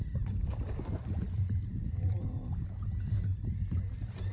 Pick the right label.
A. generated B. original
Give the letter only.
B